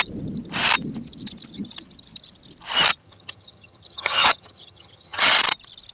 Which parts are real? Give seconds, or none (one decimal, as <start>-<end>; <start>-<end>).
0.0-3.0; 5.2-5.9